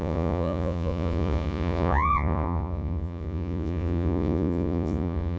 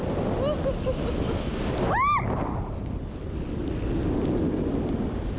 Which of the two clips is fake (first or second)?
first